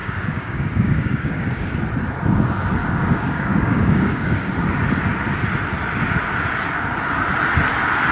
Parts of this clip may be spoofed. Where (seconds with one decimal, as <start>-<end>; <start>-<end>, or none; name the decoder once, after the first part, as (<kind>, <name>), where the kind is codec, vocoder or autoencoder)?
0.0-1.7 (codec, DAC); 2.8-4.5